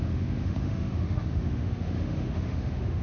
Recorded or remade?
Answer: remade